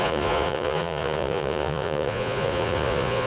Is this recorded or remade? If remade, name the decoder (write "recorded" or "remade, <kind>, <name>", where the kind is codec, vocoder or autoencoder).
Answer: remade, vocoder, Vocos